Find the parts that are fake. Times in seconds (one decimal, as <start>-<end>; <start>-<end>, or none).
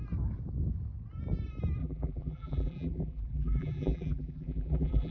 1.8-5.1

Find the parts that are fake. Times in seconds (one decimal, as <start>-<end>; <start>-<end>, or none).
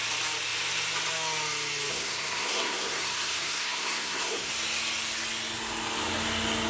1.9-4.5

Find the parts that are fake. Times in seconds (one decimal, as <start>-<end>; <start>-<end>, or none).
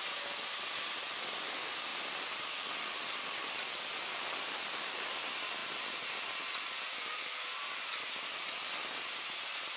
none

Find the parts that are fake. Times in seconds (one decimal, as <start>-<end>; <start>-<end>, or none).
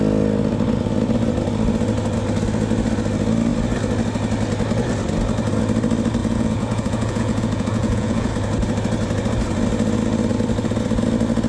6.2-8.3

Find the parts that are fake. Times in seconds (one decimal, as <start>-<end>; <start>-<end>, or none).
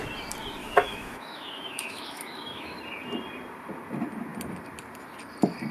0.6-2.8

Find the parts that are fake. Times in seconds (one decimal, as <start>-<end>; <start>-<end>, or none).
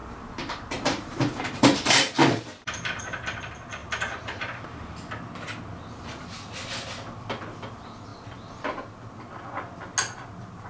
0.0-3.0; 3.8-5.0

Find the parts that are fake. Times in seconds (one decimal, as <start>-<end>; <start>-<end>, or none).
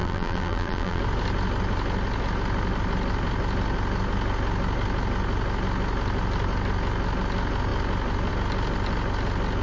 0.0-1.0